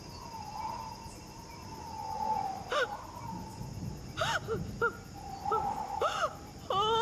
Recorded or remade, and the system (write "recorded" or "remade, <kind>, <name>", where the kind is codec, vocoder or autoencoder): recorded